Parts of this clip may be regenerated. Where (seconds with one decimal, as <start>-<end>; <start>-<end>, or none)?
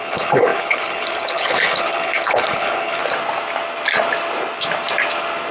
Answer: 0.0-3.0